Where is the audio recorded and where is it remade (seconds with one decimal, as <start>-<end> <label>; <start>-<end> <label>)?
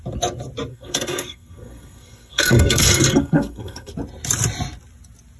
0.0-0.7 recorded; 0.7-3.9 remade; 3.9-5.4 recorded